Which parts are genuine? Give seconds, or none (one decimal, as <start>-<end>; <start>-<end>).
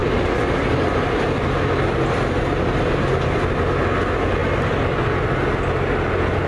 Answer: 0.0-6.5